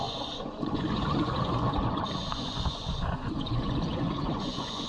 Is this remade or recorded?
remade